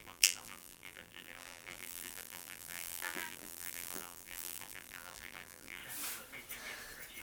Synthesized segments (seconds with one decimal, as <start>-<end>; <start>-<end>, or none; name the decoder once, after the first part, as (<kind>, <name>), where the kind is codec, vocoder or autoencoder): 0.0-5.8 (vocoder, BigVGAN v2)